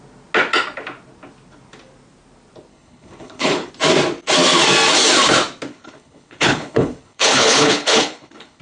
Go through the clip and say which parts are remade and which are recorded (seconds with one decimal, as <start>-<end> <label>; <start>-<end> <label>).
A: 0.0-2.7 recorded; 2.7-3.7 remade; 3.7-5.7 recorded; 5.7-8.6 remade